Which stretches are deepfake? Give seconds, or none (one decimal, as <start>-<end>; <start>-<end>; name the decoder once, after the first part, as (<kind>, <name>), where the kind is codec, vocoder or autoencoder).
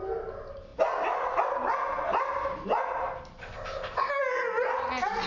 3.4-4.1 (codec, ZipCodec)